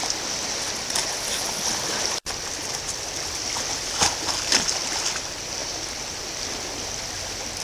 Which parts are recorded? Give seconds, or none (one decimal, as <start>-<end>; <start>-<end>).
0.0-7.6